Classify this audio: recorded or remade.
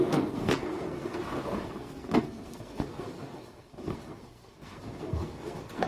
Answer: remade